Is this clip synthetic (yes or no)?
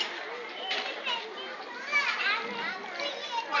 no